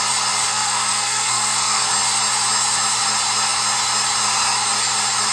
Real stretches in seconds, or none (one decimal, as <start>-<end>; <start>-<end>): 0.0-0.5; 1.9-5.3